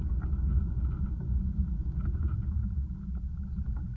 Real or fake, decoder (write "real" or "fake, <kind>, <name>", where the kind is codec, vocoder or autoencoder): real